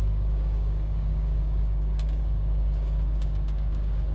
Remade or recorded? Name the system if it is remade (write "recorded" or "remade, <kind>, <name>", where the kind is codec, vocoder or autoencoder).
remade, codec, DAC